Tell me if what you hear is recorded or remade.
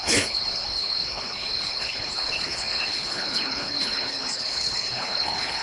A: remade